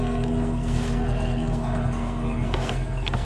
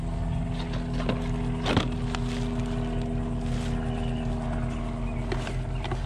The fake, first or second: first